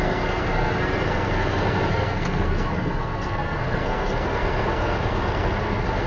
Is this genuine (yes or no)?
no